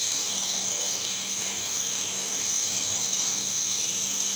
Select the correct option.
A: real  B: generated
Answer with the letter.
B